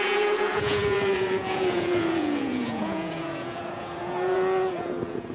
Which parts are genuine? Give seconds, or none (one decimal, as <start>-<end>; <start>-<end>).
none